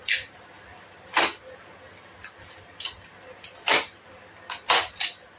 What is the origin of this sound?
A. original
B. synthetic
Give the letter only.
A